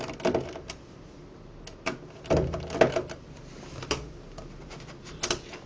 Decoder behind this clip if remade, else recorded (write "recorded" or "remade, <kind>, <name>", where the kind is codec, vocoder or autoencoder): recorded